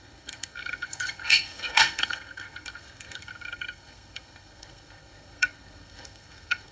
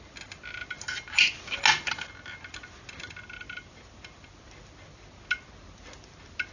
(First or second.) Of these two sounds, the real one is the second